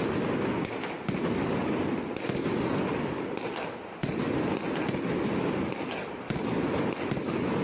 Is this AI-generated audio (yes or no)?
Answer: no